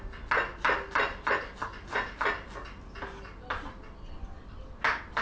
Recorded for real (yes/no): yes